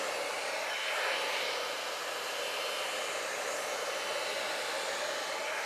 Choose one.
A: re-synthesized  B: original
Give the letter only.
B